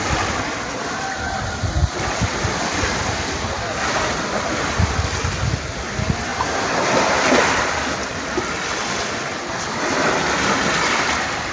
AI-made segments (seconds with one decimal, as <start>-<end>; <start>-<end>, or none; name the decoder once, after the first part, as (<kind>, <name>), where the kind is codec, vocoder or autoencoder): none